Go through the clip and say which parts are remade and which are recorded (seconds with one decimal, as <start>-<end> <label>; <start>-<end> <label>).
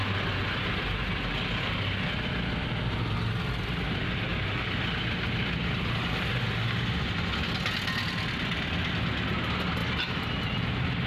0.0-11.1 recorded